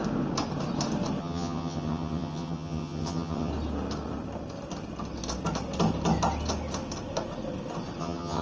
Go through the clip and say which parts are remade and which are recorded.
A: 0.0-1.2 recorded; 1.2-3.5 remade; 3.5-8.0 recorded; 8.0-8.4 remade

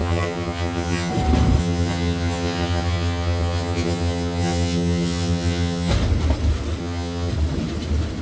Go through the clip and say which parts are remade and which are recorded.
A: 0.0-1.1 remade; 1.1-1.6 recorded; 1.6-5.9 remade; 5.9-6.8 recorded; 6.8-7.3 remade; 7.3-8.2 recorded

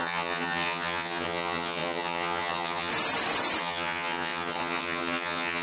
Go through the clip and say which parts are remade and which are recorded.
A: 0.0-2.9 remade; 2.9-3.6 recorded; 3.6-5.6 remade

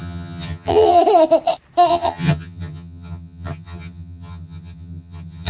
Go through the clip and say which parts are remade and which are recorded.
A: 0.0-1.0 remade; 1.0-1.9 recorded; 1.9-5.5 remade

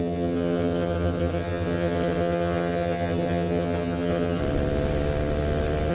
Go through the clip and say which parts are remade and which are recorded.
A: 0.0-4.4 remade; 4.4-5.9 recorded

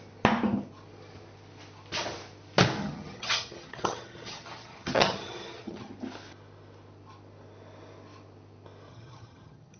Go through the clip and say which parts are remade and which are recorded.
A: 0.0-2.8 recorded; 2.8-5.9 remade; 5.9-8.9 recorded; 8.9-9.8 remade